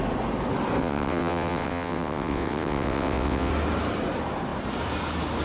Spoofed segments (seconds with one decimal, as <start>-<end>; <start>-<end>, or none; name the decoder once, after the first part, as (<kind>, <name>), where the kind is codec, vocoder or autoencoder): 0.8-3.5 (vocoder, WaveNeXt)